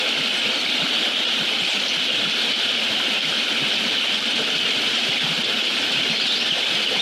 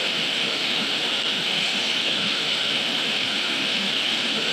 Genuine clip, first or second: first